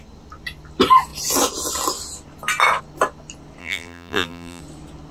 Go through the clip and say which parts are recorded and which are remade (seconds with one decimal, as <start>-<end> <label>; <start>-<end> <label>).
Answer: 0.0-3.6 recorded; 3.6-4.6 remade; 4.6-5.1 recorded